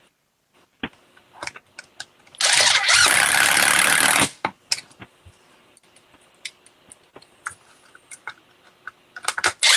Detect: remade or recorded recorded